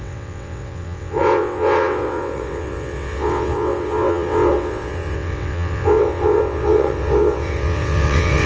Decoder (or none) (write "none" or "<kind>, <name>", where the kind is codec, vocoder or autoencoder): vocoder, WaveNeXt